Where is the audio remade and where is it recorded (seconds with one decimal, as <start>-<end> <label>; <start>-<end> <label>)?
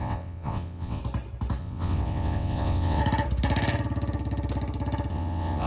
0.0-1.0 remade; 1.0-1.6 recorded; 1.6-3.0 remade; 3.0-5.1 recorded; 5.1-5.7 remade